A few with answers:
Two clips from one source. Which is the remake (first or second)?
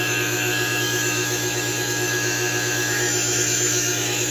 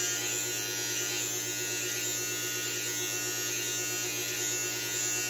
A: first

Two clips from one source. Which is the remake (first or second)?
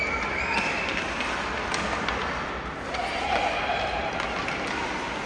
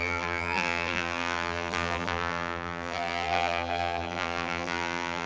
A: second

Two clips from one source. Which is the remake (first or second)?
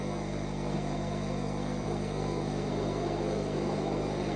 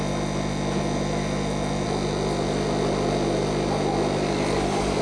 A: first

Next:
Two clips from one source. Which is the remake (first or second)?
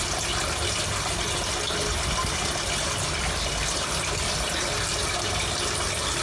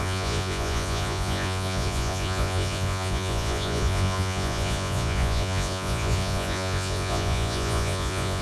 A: second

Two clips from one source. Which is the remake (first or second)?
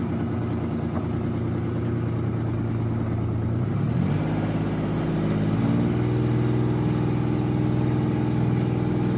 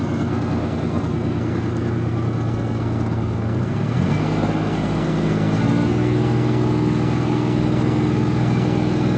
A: second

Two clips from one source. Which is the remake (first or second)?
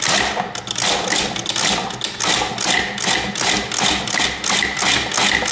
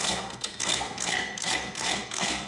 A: second